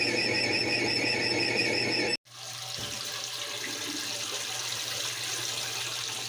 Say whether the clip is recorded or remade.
recorded